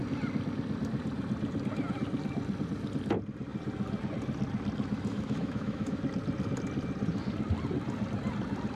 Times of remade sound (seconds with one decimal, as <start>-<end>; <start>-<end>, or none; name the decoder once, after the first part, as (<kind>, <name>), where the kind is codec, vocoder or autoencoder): 5.1-6.0 (autoencoder, DAC-VAE)